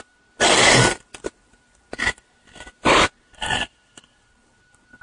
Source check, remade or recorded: recorded